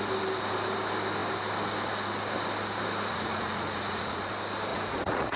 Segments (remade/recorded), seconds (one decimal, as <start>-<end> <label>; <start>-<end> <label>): 0.0-3.1 recorded; 3.1-4.3 remade; 4.3-4.7 recorded; 4.7-5.4 remade